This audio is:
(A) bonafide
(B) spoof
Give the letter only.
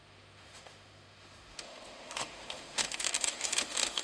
B